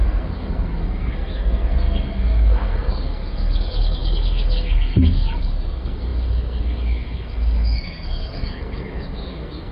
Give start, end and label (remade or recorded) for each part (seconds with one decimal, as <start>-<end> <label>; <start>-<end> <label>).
0.0-9.7 remade